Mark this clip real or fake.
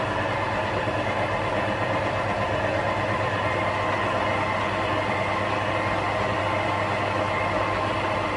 real